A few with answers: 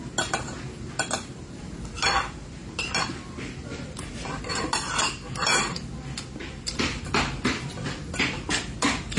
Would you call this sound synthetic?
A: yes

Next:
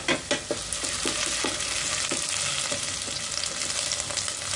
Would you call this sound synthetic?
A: no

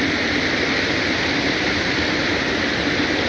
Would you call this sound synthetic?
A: no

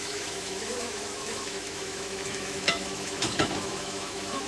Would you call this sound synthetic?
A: yes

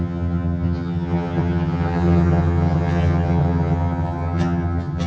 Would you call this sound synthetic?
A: yes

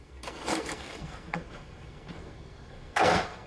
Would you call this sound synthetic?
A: yes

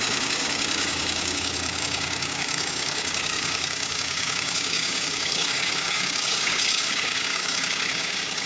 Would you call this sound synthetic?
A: yes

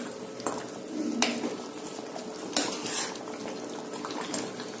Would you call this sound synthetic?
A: no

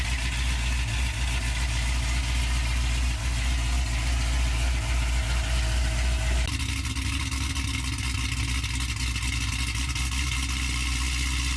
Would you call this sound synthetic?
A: no